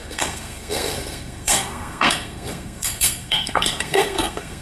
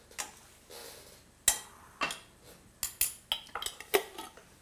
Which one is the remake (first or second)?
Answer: first